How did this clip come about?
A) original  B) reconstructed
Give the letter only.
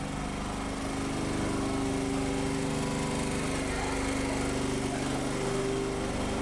A